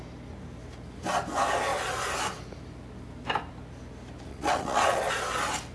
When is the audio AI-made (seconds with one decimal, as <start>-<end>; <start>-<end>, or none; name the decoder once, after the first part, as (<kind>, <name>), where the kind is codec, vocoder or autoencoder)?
4.3-5.1 (vocoder, WaveNeXt)